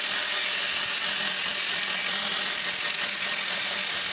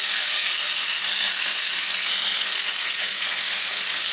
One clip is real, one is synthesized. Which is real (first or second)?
first